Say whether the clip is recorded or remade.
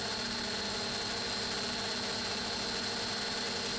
recorded